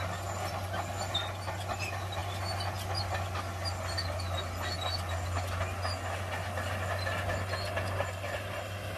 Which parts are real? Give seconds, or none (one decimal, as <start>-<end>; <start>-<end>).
0.0-9.0